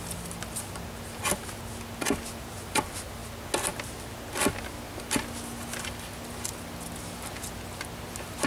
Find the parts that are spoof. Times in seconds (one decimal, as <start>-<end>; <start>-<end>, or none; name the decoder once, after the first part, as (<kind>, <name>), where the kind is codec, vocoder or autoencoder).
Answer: none